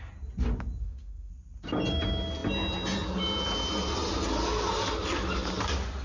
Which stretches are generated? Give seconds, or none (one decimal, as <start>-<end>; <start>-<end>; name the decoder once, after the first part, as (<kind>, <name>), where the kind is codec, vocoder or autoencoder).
0.8-1.3 (autoencoder, DAC-VAE)